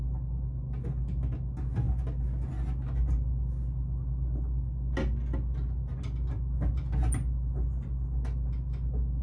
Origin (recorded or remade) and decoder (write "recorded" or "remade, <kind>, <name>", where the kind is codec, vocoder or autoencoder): recorded